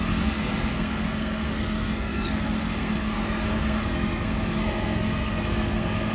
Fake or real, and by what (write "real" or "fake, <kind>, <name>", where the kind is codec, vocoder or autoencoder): fake, codec, SNAC